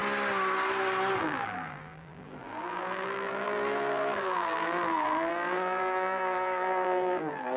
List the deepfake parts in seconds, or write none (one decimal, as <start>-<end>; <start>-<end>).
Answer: 1.2-7.6